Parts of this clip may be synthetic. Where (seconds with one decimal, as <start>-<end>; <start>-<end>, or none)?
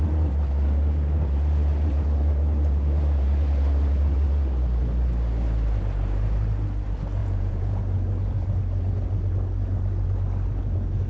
7.2-7.8